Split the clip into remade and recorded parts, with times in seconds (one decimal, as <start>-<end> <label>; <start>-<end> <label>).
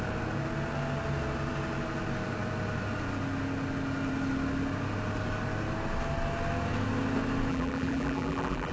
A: 0.0-7.5 recorded; 7.5-8.7 remade